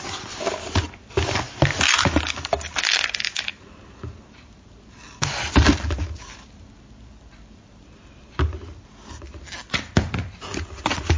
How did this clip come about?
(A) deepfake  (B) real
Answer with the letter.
B